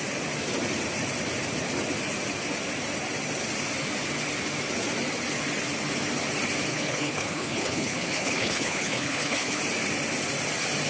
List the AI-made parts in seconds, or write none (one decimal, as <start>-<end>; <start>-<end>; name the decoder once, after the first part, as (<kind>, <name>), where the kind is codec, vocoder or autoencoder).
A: 6.7-9.6 (codec, HILCodec)